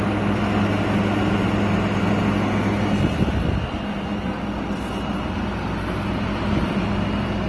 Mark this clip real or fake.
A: real